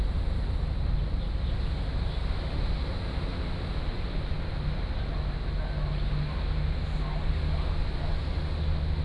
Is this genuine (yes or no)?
yes